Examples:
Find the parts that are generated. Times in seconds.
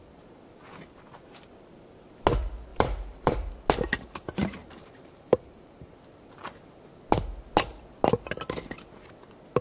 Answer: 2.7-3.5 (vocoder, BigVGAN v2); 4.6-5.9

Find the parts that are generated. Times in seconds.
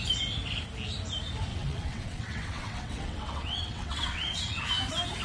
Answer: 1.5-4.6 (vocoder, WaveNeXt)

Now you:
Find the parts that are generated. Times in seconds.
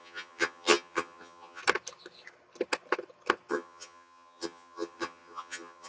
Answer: 0.0-1.6 (vocoder, HiFi-GAN); 3.5-5.9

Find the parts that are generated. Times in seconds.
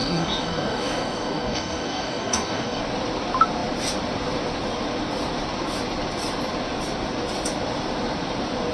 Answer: 0.0-2.8 (codec, DAC)